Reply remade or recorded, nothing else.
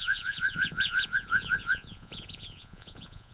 remade